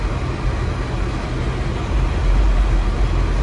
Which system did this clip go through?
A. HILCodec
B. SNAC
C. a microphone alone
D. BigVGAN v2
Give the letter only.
C